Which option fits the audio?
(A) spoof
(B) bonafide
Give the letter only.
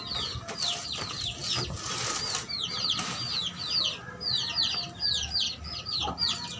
B